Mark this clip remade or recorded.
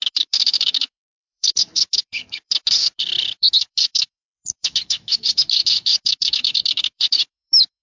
remade